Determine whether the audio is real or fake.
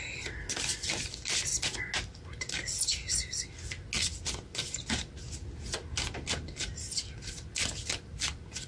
real